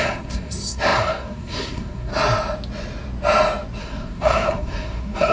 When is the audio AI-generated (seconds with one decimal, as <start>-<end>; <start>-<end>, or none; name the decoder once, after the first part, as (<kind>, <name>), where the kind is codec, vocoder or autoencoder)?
0.0-2.1 (codec, SNAC); 3.8-5.3